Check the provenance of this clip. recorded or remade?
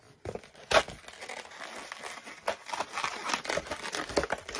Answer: recorded